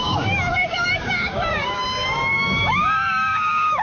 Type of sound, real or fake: fake